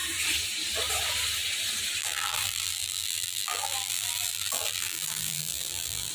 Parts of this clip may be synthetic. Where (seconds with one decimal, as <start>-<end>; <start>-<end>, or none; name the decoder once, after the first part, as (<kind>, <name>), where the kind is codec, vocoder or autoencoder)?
2.0-6.1 (vocoder, BigVGAN v2)